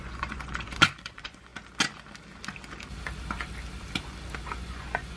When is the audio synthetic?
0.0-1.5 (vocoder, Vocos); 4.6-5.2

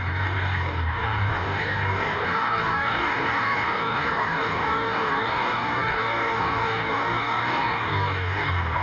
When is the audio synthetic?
0.0-8.8 (codec, DAC)

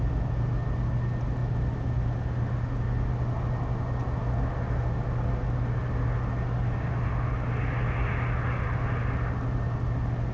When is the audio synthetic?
none

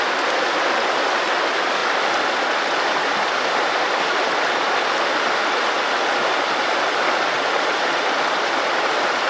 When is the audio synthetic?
none

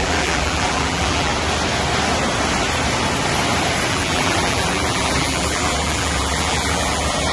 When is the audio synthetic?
0.0-1.3 (vocoder, BigVGAN v2); 3.9-7.3